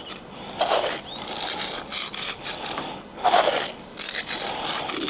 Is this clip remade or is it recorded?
remade